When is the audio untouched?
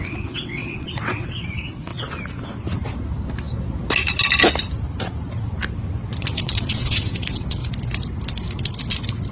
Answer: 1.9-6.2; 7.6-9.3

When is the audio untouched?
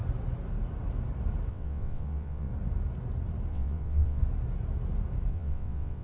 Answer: 0.0-1.5; 2.5-3.5; 4.2-5.3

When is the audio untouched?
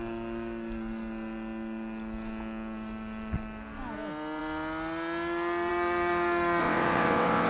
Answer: 0.0-6.6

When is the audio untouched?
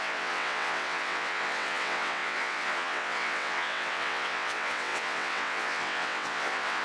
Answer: none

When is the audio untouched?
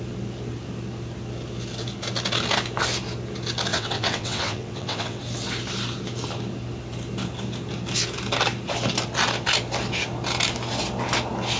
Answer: 0.0-3.7; 5.2-11.6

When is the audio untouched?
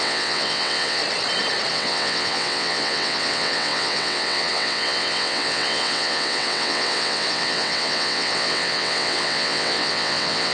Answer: 1.0-1.7